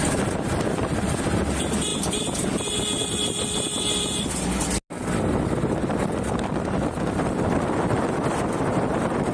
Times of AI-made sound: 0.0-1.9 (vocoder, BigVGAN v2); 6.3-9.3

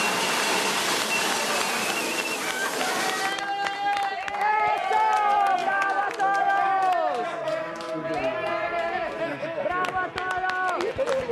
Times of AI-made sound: 9.2-9.7 (codec, SNAC)

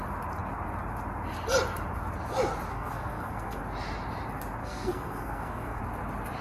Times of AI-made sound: 2.7-3.6 (codec, SNAC); 4.6-5.8

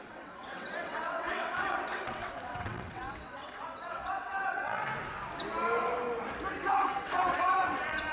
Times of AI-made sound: 0.0-4.9 (vocoder, WaveNeXt); 6.6-8.1

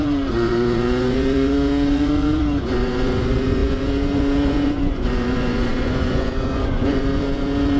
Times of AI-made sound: 0.0-7.8 (vocoder, Vocos)

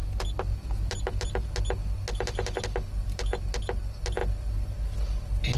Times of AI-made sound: none

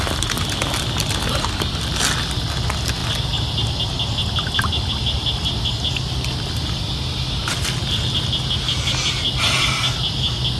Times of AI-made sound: none

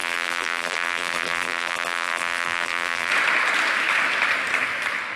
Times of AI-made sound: 0.0-3.1 (vocoder, BigVGAN v2)